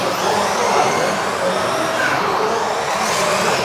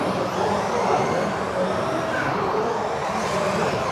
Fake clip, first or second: second